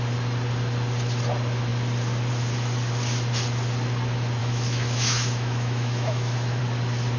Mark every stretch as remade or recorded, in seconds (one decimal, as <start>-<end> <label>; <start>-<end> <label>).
0.0-4.4 recorded; 4.4-6.6 remade; 6.6-7.2 recorded